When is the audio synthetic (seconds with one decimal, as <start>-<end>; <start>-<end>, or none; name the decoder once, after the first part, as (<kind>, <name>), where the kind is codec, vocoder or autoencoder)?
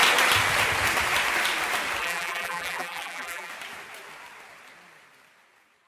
2.0-3.5 (vocoder, BigVGAN v2)